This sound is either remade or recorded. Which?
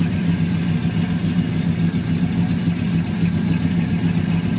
recorded